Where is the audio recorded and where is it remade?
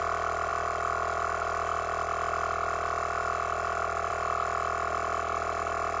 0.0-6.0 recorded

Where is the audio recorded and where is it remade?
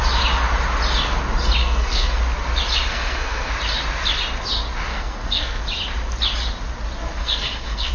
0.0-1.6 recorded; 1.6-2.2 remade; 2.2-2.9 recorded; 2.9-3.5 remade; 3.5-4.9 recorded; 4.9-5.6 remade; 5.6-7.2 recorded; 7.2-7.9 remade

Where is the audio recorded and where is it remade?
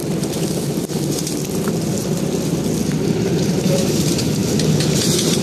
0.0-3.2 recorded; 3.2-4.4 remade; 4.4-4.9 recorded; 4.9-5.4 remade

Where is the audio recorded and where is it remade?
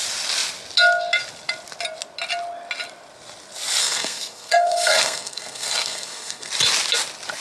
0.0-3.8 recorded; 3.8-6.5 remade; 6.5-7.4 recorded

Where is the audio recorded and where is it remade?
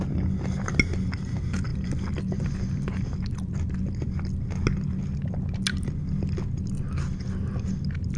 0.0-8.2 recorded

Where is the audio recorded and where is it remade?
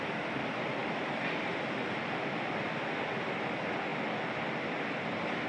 0.0-0.8 recorded; 0.8-3.0 remade; 3.0-5.5 recorded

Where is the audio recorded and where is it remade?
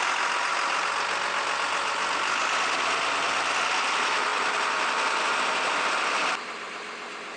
0.0-7.4 recorded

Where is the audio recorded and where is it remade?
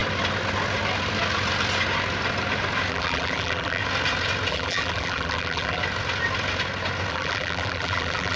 0.0-2.9 recorded; 2.9-3.8 remade; 3.8-4.5 recorded; 4.5-5.8 remade; 5.8-7.1 recorded; 7.1-8.4 remade